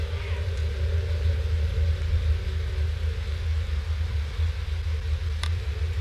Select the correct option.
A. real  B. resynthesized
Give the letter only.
A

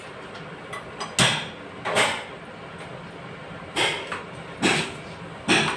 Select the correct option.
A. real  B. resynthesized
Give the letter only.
A